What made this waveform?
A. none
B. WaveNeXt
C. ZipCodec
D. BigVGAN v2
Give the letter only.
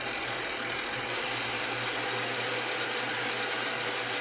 A